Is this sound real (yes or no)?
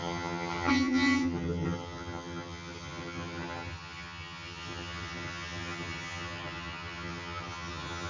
no